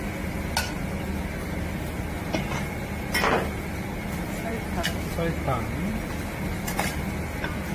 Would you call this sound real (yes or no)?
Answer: yes